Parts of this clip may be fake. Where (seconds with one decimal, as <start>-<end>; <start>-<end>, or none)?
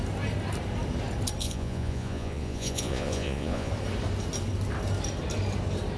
1.4-3.7